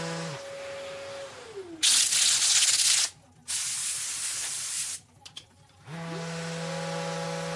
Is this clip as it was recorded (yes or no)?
yes